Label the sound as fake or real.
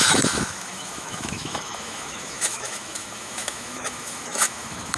fake